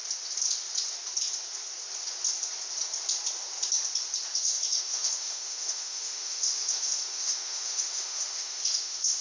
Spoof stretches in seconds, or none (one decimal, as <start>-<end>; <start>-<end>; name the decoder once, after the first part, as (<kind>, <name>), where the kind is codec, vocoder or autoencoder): 4.3-9.2 (autoencoder, DAC-VAE)